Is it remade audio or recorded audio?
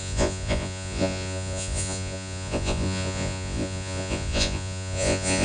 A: remade